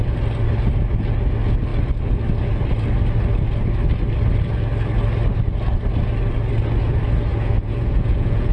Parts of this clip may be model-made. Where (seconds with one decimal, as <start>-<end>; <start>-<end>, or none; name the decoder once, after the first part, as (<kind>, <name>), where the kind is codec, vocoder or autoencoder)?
7.3-8.5 (vocoder, Vocos)